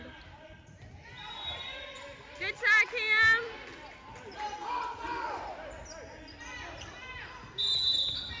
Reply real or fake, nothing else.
real